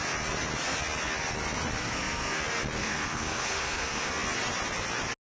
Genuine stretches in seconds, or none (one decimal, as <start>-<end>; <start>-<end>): 0.0-1.8; 2.4-2.8; 4.1-5.2